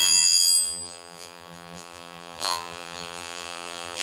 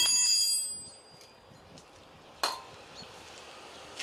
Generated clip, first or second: first